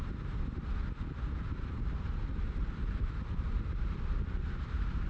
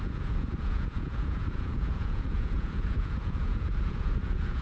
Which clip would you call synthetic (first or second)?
second